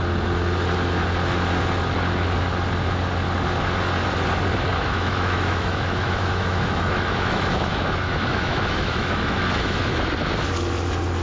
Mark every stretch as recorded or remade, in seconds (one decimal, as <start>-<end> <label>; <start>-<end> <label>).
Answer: 0.0-4.7 recorded; 4.7-9.8 remade; 9.8-11.2 recorded